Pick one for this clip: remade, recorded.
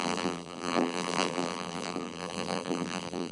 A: remade